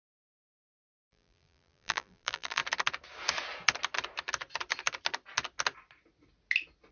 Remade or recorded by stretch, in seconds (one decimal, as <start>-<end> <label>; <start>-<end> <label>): 0.0-2.6 remade; 2.6-6.9 recorded